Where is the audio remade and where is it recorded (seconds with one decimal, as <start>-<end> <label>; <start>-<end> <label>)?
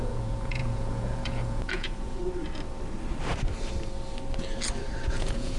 0.0-2.2 remade; 2.2-5.1 recorded; 5.1-5.6 remade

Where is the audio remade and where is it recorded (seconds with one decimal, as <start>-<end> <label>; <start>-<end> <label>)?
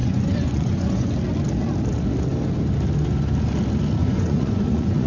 0.0-1.1 remade; 1.1-4.0 recorded; 4.0-5.1 remade